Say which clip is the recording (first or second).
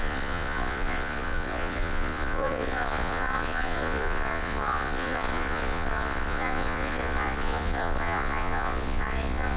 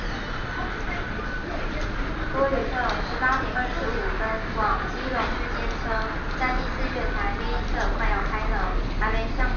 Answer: second